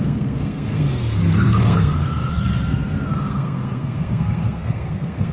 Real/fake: fake